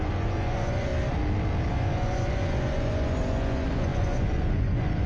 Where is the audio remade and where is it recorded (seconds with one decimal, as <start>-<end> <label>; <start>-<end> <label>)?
0.0-0.9 remade; 0.9-1.7 recorded; 1.7-5.1 remade